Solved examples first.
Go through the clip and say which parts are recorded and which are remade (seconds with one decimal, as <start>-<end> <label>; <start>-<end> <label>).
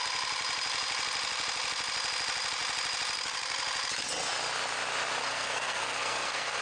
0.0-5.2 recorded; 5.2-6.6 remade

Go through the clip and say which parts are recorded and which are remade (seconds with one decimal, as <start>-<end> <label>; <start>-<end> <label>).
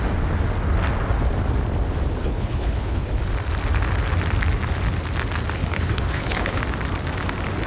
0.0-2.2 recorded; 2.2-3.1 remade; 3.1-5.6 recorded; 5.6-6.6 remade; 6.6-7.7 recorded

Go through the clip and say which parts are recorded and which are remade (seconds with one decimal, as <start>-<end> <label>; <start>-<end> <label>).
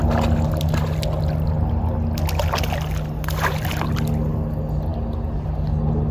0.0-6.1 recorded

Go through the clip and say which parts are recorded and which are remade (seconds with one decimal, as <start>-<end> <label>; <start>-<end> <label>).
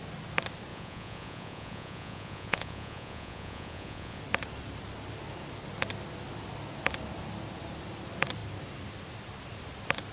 0.0-0.7 recorded; 0.7-4.2 remade; 4.2-10.1 recorded